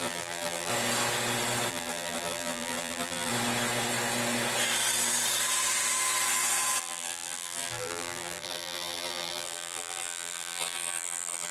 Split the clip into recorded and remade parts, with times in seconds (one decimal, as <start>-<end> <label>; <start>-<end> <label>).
0.0-0.7 remade; 0.7-1.7 recorded; 1.7-3.3 remade; 3.3-6.8 recorded; 6.8-11.5 remade